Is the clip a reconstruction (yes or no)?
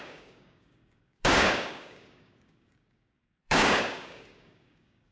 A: yes